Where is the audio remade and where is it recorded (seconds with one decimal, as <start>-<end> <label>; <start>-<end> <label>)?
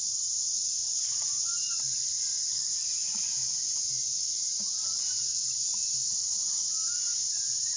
0.0-3.4 remade; 3.4-3.9 recorded; 3.9-7.8 remade